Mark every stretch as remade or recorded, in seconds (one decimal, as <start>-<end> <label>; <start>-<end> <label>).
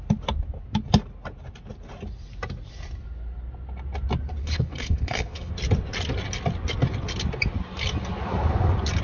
0.0-4.4 recorded; 4.4-5.5 remade; 5.5-9.0 recorded